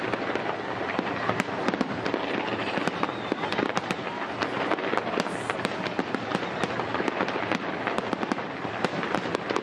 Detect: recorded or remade recorded